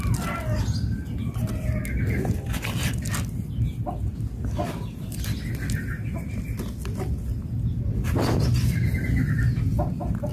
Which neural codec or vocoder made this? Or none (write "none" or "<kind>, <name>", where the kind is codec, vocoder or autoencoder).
none